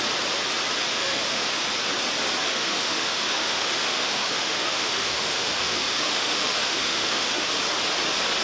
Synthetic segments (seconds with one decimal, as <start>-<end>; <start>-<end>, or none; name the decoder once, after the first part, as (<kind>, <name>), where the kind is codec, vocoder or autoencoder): 0.9-1.6 (autoencoder, DAC-VAE); 2.5-7.5